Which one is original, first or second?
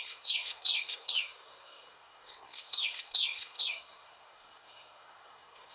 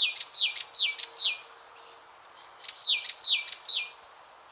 second